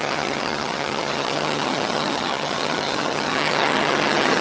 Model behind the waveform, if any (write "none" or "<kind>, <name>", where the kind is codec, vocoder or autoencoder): vocoder, HiFi-GAN